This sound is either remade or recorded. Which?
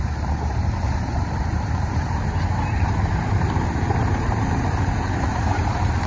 remade